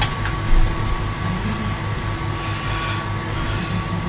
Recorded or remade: recorded